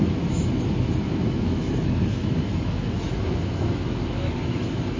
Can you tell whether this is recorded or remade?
remade